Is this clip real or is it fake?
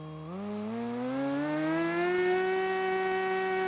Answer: real